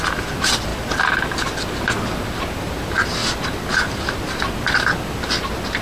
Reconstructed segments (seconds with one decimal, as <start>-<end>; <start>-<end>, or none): none